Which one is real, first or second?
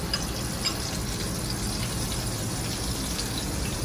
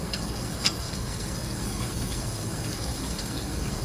first